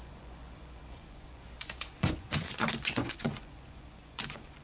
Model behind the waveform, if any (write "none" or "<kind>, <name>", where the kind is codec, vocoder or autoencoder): vocoder, Vocos